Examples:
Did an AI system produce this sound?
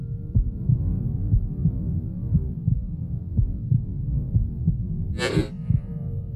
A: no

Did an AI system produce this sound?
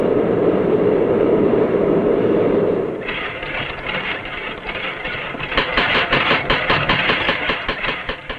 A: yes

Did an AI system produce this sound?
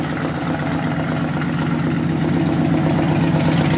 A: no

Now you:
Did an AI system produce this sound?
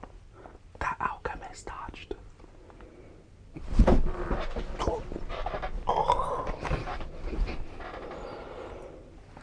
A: no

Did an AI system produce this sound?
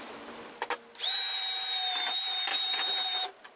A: no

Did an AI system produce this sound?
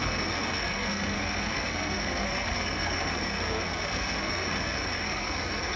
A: yes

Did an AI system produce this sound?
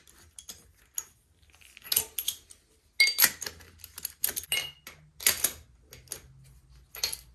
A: no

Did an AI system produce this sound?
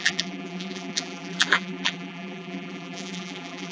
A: yes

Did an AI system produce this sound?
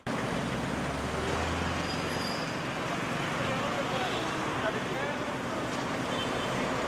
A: no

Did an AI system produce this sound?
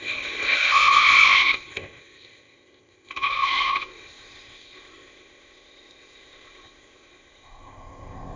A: yes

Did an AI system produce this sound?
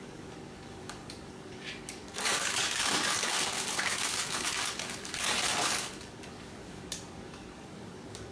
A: yes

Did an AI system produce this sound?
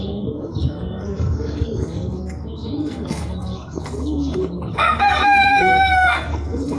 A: yes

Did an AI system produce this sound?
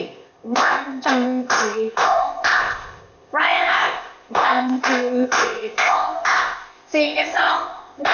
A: yes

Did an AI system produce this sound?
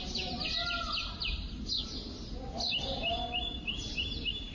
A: no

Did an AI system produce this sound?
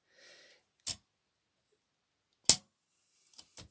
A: no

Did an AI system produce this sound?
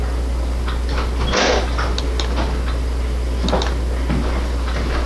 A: no